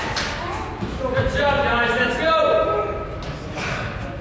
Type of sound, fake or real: real